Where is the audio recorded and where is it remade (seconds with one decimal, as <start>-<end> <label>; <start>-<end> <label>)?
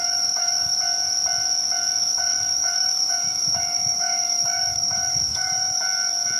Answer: 0.0-0.8 remade; 0.8-2.0 recorded; 2.0-5.8 remade; 5.8-6.4 recorded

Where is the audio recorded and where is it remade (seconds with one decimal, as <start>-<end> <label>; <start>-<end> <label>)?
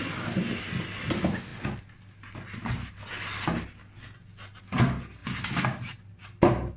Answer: 0.0-6.8 recorded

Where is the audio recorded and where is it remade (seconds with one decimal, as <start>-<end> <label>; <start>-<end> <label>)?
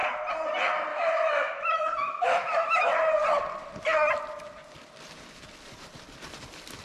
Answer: 0.0-0.9 recorded; 0.9-2.9 remade; 2.9-6.8 recorded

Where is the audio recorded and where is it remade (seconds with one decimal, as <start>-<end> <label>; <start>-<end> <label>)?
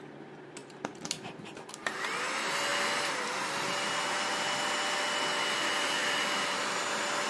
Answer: 0.0-7.3 recorded